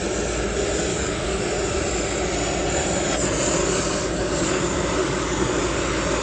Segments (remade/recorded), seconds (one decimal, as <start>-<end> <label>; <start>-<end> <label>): 0.0-0.9 recorded; 0.9-1.4 remade; 1.4-3.6 recorded; 3.6-4.6 remade; 4.6-5.0 recorded; 5.0-5.8 remade; 5.8-6.2 recorded

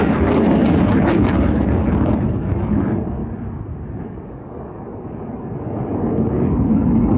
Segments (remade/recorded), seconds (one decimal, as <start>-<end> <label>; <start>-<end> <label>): 0.0-3.2 remade; 3.2-4.0 recorded; 4.0-7.2 remade

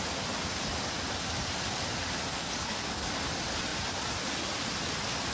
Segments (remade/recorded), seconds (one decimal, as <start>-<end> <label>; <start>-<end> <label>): 0.0-2.3 recorded; 2.3-3.1 remade; 3.1-5.3 recorded

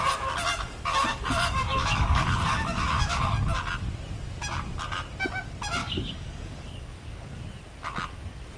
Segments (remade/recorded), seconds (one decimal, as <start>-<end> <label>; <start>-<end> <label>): 0.0-1.1 recorded; 1.1-3.3 remade; 3.3-5.8 recorded; 5.8-7.4 remade; 7.4-8.6 recorded

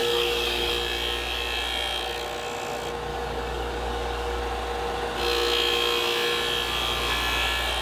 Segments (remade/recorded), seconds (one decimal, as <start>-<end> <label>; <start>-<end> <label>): 0.0-0.7 remade; 0.7-3.1 recorded; 3.1-4.4 remade; 4.4-7.8 recorded